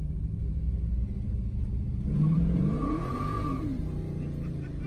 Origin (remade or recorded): remade